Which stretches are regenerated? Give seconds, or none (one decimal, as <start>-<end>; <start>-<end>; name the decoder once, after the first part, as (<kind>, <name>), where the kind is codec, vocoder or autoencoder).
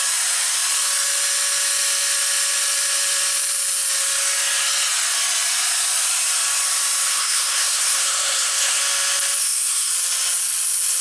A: 7.1-8.8 (codec, SNAC); 9.4-9.9